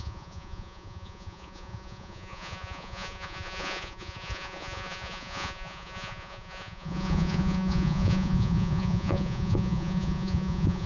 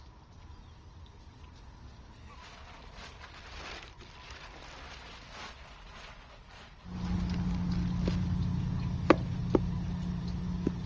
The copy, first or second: first